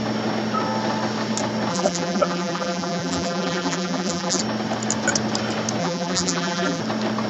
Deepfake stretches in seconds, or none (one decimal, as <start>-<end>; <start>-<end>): 1.7-4.4; 5.8-6.8